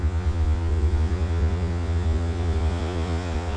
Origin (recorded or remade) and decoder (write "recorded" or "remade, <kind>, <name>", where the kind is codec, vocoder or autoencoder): remade, vocoder, Vocos